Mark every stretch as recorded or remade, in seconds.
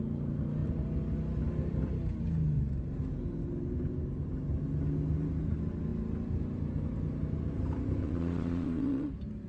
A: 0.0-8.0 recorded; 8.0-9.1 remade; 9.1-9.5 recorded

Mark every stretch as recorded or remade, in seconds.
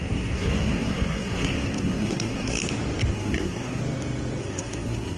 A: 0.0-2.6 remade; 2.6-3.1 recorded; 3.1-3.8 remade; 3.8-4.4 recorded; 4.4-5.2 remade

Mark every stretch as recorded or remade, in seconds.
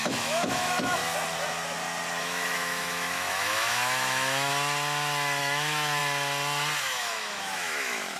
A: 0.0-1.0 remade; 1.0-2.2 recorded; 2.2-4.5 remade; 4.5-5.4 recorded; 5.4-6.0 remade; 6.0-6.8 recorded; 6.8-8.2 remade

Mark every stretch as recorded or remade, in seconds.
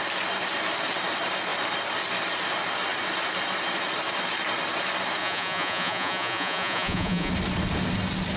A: 0.0-5.2 recorded; 5.2-7.3 remade; 7.3-8.4 recorded